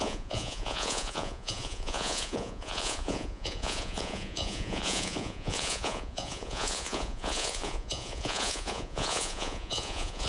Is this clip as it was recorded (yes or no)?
no